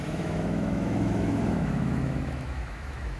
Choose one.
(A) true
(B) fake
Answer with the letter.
B